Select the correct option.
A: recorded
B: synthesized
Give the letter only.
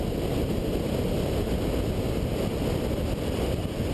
A